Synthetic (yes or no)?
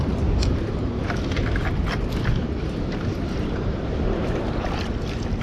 no